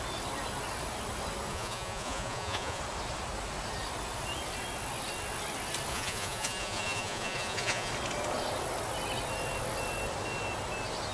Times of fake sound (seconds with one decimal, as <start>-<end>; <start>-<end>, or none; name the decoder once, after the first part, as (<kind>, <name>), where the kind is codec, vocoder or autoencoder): 1.5-2.8 (vocoder, Vocos); 5.9-7.9